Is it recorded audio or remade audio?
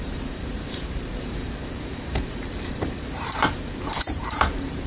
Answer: remade